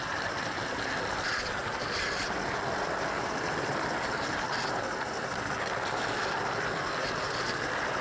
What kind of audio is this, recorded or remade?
recorded